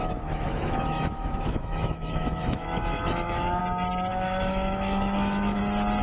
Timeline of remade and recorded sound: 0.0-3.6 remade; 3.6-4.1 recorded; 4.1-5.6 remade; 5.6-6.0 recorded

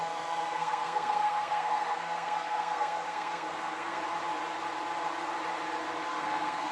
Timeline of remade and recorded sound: 0.0-4.0 remade; 4.0-6.1 recorded; 6.1-6.7 remade

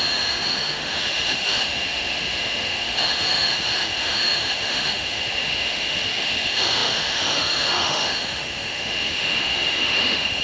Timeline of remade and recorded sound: 0.0-10.4 remade

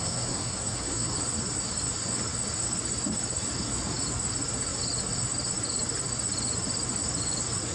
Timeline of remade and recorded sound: 0.0-1.1 remade; 1.1-7.7 recorded

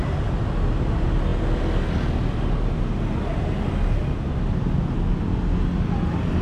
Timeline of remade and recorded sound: 0.0-6.4 recorded

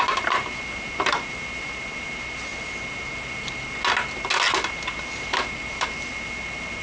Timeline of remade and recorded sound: 0.0-6.8 recorded

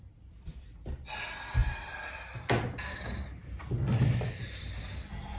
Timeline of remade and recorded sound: 0.0-1.6 recorded; 1.6-4.8 remade; 4.8-5.4 recorded

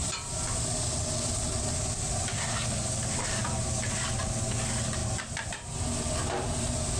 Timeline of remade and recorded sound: 0.0-4.1 remade; 4.1-7.0 recorded